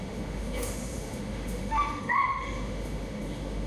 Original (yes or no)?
no